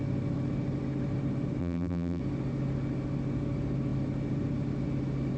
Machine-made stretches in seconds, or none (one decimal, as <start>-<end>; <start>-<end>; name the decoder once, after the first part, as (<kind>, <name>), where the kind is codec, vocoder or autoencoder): 1.6-2.2 (vocoder, BigVGAN v2)